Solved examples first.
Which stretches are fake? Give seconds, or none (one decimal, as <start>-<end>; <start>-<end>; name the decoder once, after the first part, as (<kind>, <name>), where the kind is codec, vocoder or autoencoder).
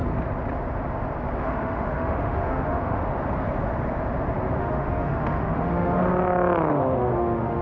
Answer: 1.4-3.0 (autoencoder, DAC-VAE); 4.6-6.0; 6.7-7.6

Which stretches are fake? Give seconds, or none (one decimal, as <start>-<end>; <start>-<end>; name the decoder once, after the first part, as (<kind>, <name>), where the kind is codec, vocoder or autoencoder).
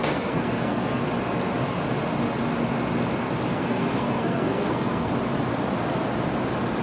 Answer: 0.0-1.0 (codec, SNAC); 3.5-5.1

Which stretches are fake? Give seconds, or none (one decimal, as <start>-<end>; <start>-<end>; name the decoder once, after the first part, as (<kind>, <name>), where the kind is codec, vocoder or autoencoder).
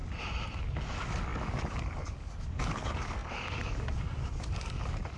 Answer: 0.6-5.2 (codec, DAC)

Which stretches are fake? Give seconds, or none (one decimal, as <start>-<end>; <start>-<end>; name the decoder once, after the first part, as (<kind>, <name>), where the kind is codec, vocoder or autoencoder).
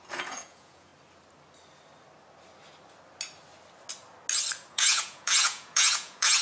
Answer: 0.0-0.9 (vocoder, Vocos); 4.7-6.4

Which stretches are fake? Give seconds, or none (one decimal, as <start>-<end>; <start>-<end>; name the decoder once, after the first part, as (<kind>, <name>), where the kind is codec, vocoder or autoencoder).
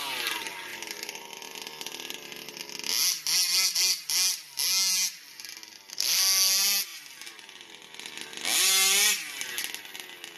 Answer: 5.9-6.5 (codec, SNAC)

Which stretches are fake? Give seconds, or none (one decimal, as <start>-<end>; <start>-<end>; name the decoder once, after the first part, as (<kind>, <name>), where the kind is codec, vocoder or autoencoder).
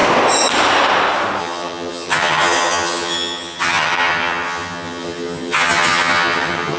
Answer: 1.4-6.8 (vocoder, HiFi-GAN)